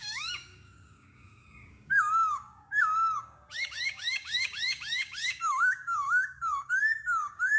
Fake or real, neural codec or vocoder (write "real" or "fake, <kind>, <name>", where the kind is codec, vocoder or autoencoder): fake, codec, DAC